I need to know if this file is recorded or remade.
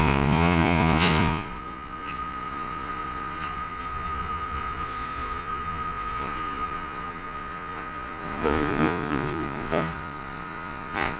remade